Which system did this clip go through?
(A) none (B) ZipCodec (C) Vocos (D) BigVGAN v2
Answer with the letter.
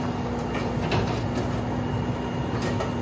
A